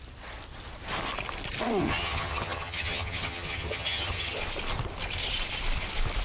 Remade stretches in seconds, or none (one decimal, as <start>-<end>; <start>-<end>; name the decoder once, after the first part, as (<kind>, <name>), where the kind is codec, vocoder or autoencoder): 1.8-4.4 (vocoder, HiFi-GAN)